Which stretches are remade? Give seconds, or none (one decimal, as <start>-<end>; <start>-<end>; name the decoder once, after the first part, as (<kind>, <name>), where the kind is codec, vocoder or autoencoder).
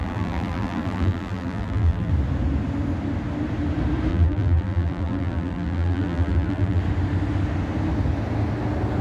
0.0-2.1 (vocoder, BigVGAN v2); 4.1-6.8